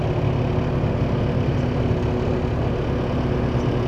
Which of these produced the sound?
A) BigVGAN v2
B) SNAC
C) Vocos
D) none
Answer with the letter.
D